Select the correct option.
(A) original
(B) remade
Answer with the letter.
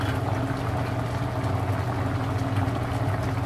A